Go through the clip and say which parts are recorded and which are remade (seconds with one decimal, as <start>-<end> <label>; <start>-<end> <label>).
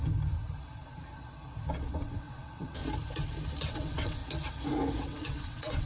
0.0-1.7 recorded; 1.7-2.8 remade; 2.8-3.7 recorded; 3.7-4.2 remade; 4.2-5.0 recorded; 5.0-5.9 remade